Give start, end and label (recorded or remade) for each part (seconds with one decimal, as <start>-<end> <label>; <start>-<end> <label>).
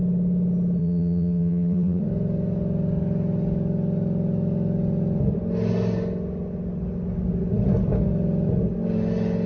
0.0-0.8 recorded; 0.8-2.0 remade; 2.0-9.5 recorded